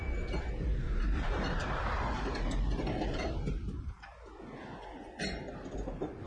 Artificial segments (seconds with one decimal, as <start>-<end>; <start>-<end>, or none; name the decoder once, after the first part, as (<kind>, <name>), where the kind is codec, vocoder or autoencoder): 0.0-4.1 (vocoder, BigVGAN v2); 4.9-6.3